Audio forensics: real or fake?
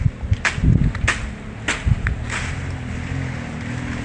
real